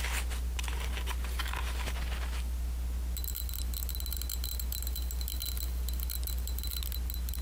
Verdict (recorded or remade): recorded